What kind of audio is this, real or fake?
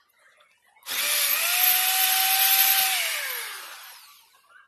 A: real